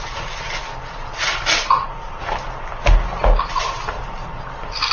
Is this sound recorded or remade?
recorded